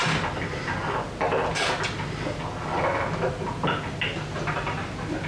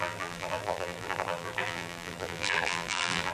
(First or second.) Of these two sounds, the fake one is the second